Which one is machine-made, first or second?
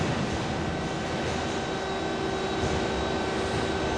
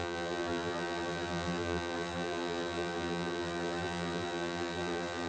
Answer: second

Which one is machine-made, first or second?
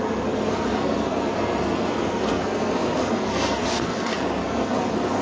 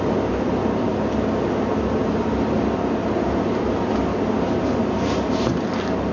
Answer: first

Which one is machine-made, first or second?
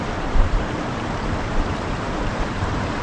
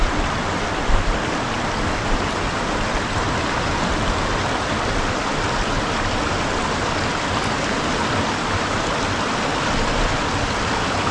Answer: first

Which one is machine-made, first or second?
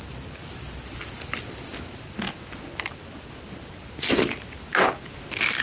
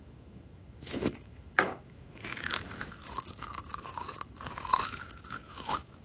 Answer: second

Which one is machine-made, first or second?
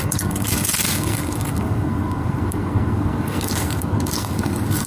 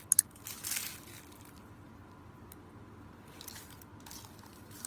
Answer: first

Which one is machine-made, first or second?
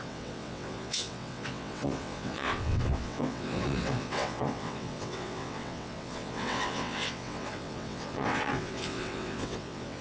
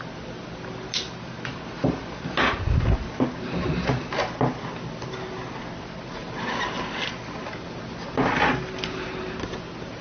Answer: first